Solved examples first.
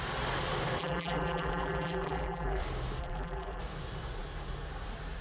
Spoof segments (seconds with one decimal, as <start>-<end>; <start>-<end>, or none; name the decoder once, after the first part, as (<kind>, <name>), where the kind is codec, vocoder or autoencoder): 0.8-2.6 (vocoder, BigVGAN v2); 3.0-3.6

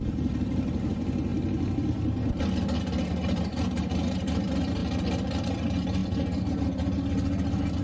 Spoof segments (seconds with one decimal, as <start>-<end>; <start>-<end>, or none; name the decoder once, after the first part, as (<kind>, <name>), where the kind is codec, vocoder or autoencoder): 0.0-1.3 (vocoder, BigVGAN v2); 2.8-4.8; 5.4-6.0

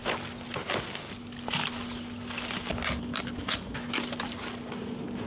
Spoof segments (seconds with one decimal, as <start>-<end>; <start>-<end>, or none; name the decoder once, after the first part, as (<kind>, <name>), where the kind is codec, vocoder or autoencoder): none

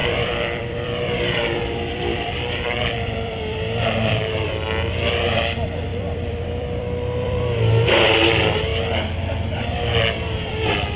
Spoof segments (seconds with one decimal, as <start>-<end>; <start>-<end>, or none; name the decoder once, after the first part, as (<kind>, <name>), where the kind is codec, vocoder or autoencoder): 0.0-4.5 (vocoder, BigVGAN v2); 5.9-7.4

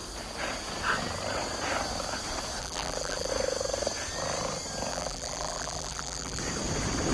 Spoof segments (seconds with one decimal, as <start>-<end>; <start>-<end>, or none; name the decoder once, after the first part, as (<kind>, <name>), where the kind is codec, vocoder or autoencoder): 2.6-3.3 (vocoder, BigVGAN v2); 4.9-6.4

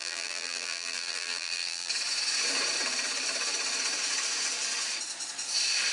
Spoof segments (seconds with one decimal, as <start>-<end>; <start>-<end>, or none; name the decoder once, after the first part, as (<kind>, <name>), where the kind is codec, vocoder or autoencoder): 0.0-1.9 (vocoder, BigVGAN v2)